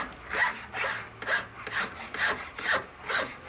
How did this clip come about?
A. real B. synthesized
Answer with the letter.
A